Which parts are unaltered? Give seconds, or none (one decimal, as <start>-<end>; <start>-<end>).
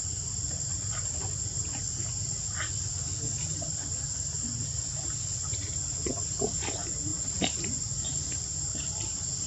0.0-9.5